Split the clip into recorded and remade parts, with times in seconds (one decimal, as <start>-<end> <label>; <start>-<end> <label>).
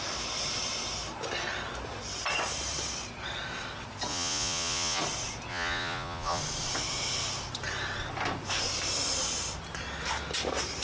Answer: 0.0-4.1 recorded; 4.1-5.0 remade; 5.0-5.5 recorded; 5.5-6.4 remade; 6.4-10.8 recorded